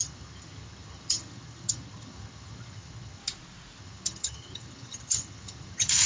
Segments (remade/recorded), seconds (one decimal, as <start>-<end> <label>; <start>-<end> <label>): 0.0-3.2 remade; 3.2-3.8 recorded; 3.8-6.1 remade